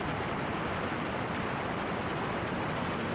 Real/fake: real